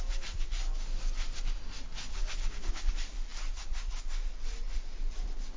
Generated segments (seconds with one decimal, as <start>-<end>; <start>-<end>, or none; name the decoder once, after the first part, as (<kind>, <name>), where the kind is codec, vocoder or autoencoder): 0.0-0.6 (vocoder, BigVGAN v2); 2.7-5.6